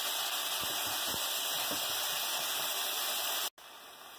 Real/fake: real